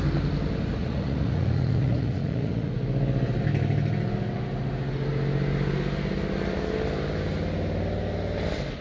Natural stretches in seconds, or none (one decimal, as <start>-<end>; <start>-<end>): 0.0-0.8; 2.7-8.8